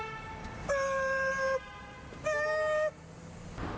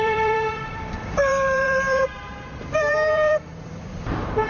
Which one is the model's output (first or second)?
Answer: second